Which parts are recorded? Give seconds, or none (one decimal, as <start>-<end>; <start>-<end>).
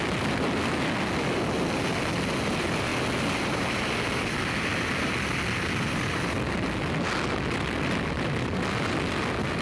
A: 0.0-9.6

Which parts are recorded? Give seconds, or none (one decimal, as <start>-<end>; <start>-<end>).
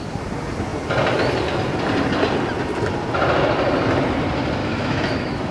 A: 0.0-4.6